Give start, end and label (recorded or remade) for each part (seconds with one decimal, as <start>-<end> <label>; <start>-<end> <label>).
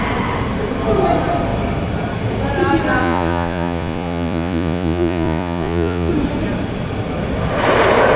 0.0-3.0 recorded; 3.0-6.1 remade; 6.1-8.2 recorded